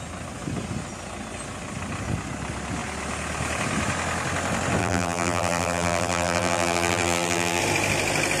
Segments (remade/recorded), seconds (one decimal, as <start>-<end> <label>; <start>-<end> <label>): 0.0-4.8 recorded; 4.8-7.6 remade; 7.6-8.4 recorded